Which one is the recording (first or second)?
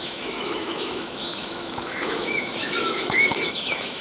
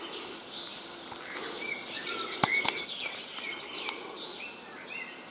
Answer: second